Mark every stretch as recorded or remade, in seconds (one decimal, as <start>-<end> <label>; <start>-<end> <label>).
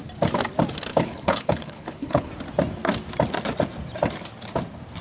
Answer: 0.0-0.9 recorded; 0.9-2.3 remade; 2.3-5.0 recorded